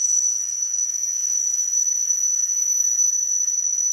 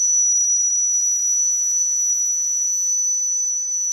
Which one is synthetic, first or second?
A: first